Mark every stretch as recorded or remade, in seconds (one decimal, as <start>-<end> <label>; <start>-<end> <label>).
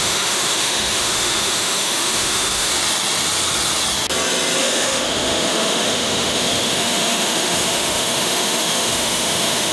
0.0-2.7 remade; 2.7-4.6 recorded; 4.6-9.7 remade